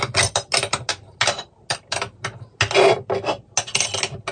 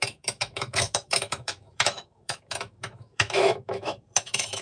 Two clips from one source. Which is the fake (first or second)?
second